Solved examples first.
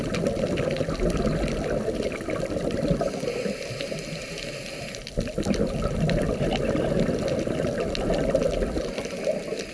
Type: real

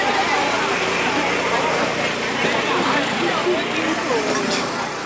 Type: real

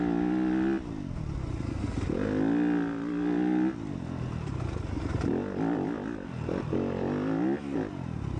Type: real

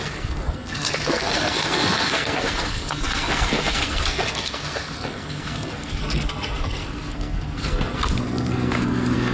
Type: fake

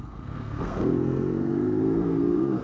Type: fake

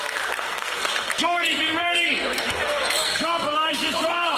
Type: fake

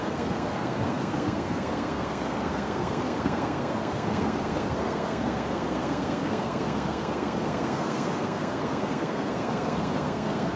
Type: fake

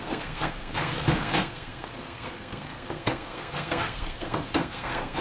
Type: fake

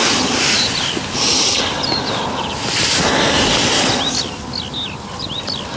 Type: real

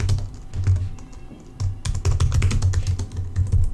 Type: real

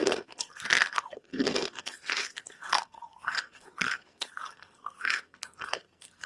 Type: fake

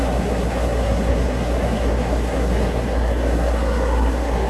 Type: fake